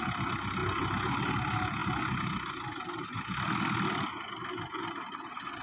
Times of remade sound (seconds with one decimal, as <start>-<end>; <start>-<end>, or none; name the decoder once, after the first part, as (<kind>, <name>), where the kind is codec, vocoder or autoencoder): none